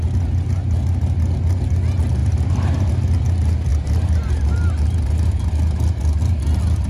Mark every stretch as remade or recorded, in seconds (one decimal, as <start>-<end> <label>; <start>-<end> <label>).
0.0-2.2 recorded; 2.2-2.9 remade; 2.9-3.7 recorded; 3.7-5.5 remade; 5.5-6.9 recorded